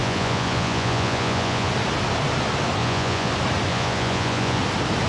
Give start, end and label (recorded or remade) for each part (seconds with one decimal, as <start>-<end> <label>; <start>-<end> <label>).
0.0-1.7 remade; 1.7-2.8 recorded; 2.8-3.3 remade; 3.3-3.7 recorded; 3.7-4.6 remade; 4.6-5.1 recorded